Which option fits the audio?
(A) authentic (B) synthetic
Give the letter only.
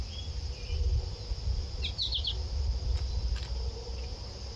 A